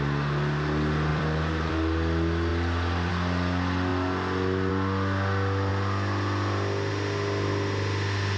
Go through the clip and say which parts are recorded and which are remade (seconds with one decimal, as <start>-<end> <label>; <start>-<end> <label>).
0.0-1.1 recorded; 1.1-1.7 remade; 1.7-8.4 recorded